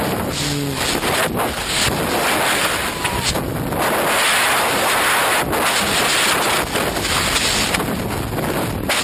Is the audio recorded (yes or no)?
yes